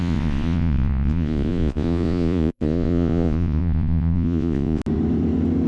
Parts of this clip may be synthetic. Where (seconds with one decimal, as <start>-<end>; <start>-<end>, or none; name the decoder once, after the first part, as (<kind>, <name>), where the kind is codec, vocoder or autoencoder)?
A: 0.0-4.8 (vocoder, Vocos)